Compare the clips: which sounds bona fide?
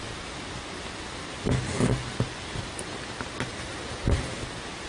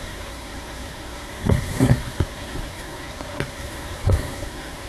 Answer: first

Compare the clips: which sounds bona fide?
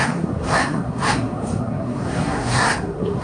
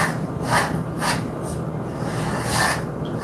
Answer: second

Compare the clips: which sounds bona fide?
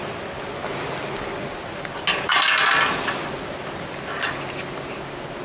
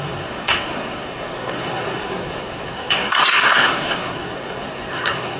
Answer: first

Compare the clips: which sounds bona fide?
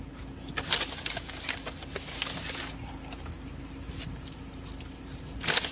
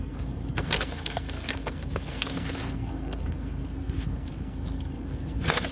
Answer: first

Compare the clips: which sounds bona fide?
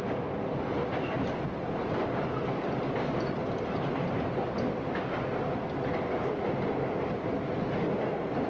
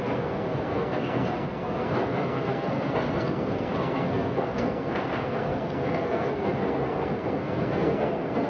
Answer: first